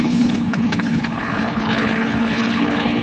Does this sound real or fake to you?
fake